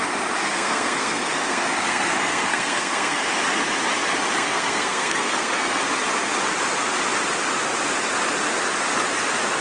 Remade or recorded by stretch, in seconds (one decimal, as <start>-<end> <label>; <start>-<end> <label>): 0.0-0.5 recorded; 0.5-3.2 remade; 3.2-4.4 recorded; 4.4-5.8 remade; 5.8-9.6 recorded